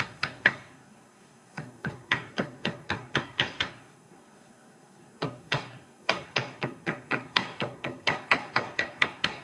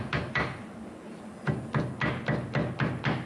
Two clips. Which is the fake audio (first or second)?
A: first